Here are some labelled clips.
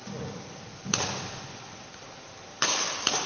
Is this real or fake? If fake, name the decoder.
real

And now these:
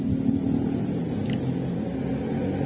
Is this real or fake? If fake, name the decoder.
real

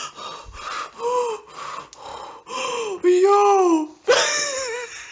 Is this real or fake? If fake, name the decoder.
real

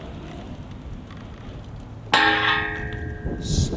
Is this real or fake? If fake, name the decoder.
real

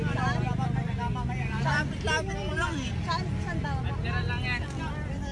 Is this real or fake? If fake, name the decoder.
real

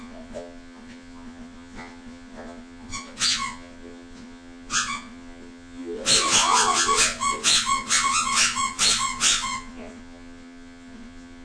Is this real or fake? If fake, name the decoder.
fake, vocoder, Vocos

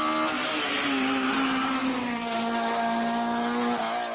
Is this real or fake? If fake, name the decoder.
real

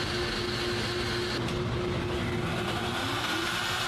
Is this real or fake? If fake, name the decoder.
real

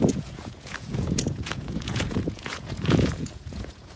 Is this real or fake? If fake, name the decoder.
fake, vocoder, Vocos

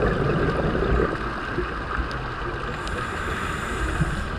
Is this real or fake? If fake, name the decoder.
real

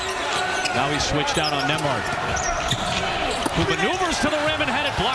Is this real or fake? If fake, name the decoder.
real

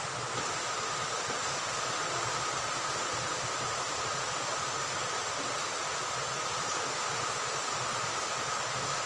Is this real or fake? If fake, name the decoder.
real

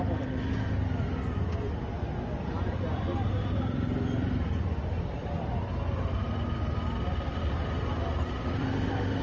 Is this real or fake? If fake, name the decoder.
real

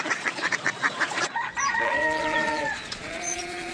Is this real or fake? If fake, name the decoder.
fake, vocoder, Vocos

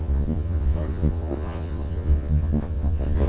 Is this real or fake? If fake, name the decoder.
fake, vocoder, Vocos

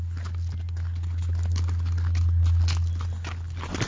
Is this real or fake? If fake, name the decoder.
real